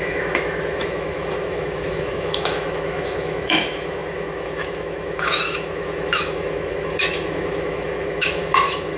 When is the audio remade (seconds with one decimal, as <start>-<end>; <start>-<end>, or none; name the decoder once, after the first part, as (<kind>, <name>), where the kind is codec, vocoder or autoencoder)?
0.0-9.0 (autoencoder, DAC-VAE)